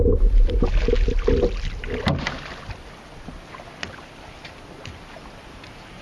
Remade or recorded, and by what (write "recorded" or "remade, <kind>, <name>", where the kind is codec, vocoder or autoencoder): recorded